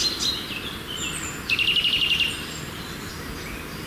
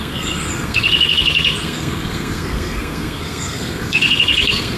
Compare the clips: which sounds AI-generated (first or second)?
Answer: second